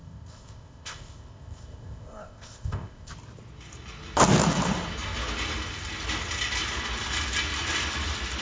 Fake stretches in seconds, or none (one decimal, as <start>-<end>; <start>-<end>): 0.0-3.1